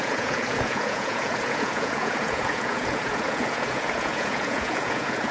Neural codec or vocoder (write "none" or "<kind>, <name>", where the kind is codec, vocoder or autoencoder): vocoder, Vocos